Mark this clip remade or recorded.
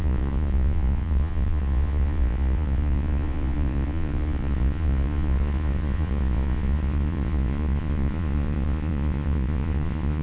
remade